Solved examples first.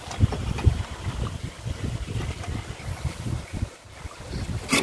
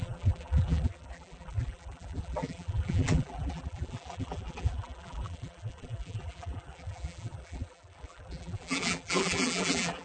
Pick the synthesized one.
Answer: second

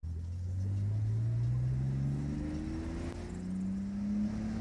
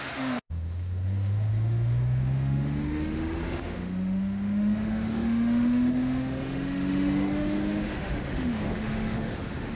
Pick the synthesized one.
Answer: second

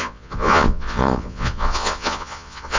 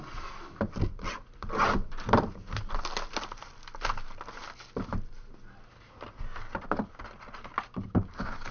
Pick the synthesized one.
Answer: first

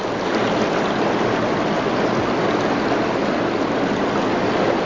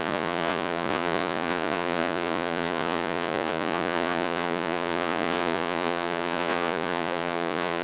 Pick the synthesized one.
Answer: second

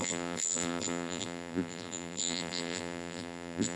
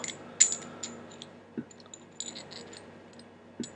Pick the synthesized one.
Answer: first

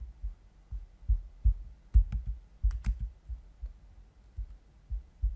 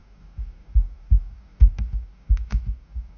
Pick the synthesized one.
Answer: second